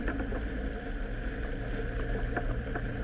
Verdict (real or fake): real